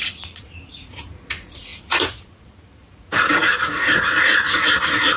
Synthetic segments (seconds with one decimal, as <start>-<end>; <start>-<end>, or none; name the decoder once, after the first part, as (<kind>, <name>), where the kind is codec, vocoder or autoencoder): 0.0-5.2 (vocoder, Vocos)